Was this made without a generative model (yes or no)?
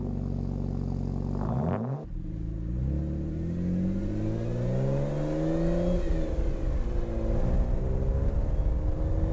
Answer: yes